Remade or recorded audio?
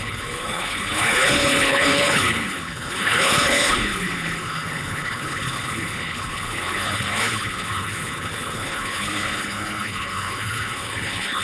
remade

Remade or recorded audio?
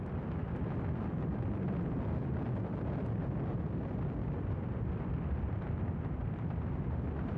remade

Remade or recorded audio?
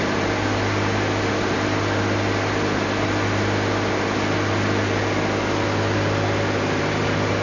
recorded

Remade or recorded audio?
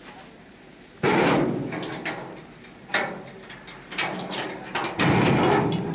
recorded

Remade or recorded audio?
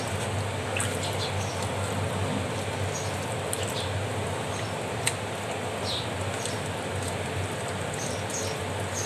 recorded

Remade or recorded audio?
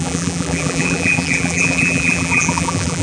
remade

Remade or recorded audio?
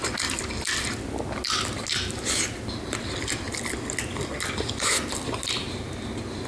recorded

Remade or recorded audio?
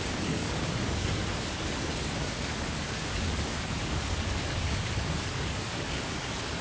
remade